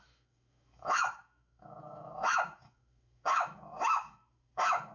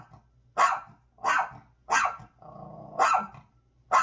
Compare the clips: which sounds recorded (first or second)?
second